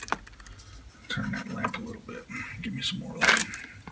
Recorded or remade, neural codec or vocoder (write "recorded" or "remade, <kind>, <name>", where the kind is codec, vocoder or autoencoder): recorded